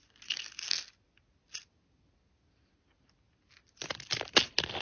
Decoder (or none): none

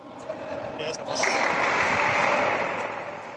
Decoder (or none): none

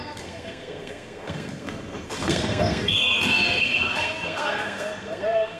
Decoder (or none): codec, SNAC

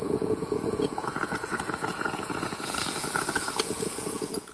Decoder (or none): vocoder, Vocos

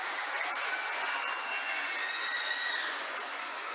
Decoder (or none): vocoder, Vocos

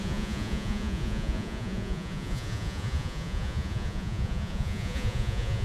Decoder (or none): vocoder, Vocos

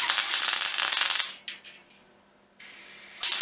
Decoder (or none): none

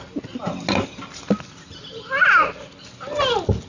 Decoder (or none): none